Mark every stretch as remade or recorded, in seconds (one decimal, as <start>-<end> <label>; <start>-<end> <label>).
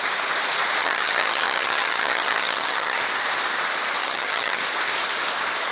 0.0-0.8 recorded; 0.8-3.0 remade; 3.0-4.0 recorded; 4.0-4.6 remade; 4.6-5.7 recorded